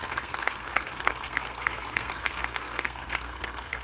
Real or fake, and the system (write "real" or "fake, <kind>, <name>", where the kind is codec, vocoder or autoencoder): fake, codec, SNAC